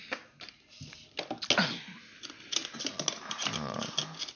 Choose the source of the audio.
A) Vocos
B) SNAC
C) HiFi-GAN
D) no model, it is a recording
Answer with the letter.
D